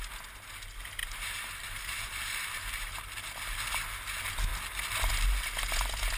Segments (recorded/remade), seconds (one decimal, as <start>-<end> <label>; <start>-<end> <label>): 0.0-1.0 recorded; 1.0-2.9 remade; 2.9-6.2 recorded